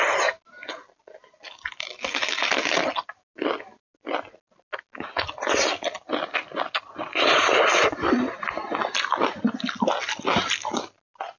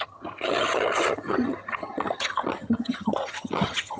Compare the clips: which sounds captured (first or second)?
first